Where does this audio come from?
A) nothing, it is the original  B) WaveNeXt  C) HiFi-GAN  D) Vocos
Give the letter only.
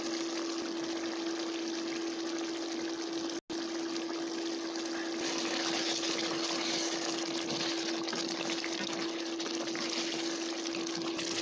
A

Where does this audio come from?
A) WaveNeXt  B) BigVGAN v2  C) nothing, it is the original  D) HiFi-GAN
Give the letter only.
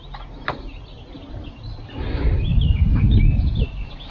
C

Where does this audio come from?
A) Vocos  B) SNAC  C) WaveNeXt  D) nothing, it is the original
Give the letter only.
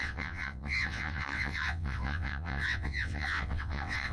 C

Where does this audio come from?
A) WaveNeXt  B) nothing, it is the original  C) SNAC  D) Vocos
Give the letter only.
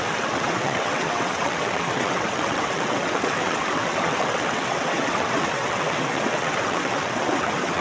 A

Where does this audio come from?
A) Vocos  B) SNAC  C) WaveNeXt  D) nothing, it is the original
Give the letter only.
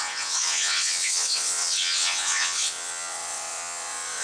C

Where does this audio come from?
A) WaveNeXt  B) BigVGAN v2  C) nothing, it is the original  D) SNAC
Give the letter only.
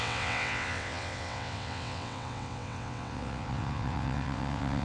A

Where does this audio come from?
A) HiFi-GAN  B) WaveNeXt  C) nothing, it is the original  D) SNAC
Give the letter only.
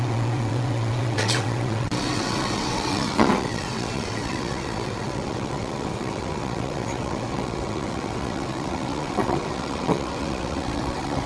B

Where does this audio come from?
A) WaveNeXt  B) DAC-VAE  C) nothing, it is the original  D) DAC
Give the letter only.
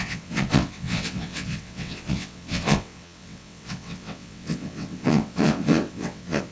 A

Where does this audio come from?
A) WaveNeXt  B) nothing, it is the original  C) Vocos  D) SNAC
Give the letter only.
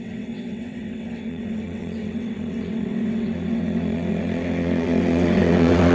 A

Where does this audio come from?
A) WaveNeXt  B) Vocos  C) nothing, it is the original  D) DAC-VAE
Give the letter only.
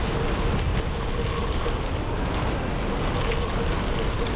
C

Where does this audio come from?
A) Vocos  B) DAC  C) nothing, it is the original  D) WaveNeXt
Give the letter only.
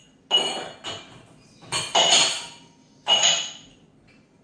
C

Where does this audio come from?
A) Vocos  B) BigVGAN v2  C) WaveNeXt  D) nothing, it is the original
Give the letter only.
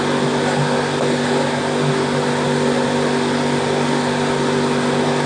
D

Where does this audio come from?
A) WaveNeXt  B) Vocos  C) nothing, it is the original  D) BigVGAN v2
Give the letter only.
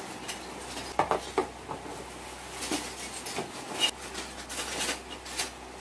C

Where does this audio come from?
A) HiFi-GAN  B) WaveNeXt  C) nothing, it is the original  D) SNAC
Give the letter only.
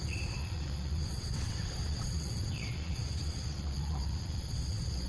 B